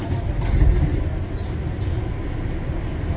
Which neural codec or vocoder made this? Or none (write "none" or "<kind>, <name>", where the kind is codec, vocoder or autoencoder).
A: none